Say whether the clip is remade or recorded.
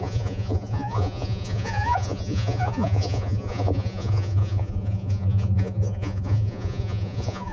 remade